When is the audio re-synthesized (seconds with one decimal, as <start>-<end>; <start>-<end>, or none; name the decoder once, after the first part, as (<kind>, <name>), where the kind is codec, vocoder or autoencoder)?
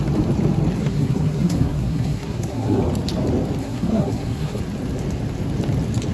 0.8-2.8 (codec, SNAC); 3.6-4.6